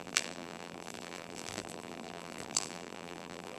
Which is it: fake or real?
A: fake